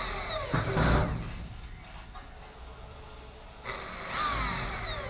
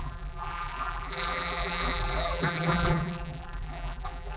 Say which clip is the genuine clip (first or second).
first